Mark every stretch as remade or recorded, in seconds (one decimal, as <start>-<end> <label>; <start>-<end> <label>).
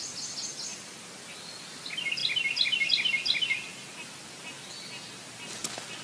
0.0-6.0 recorded